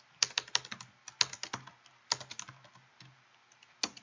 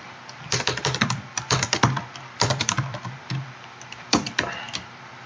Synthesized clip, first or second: second